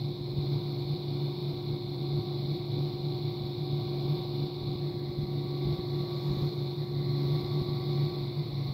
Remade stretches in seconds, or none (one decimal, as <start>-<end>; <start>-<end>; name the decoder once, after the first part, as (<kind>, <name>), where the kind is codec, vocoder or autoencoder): none